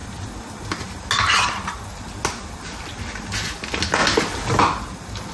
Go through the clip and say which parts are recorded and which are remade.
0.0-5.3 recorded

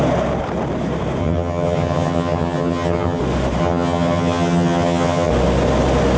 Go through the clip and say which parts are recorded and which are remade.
0.0-1.2 recorded; 1.2-3.2 remade; 3.2-3.6 recorded; 3.6-5.3 remade; 5.3-6.2 recorded

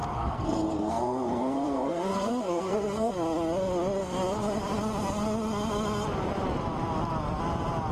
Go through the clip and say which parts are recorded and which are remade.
0.0-3.1 remade; 3.1-7.9 recorded

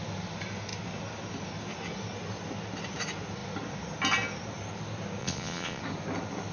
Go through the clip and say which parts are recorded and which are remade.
0.0-5.2 recorded; 5.2-5.8 remade; 5.8-6.5 recorded